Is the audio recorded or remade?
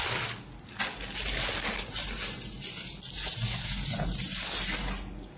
recorded